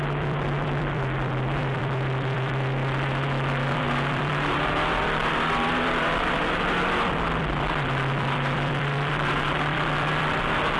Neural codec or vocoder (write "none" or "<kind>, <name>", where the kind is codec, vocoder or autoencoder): vocoder, BigVGAN v2